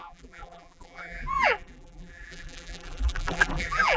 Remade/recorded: remade